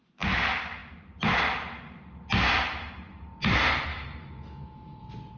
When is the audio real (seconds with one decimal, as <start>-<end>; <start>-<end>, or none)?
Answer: 0.0-3.9; 5.0-5.4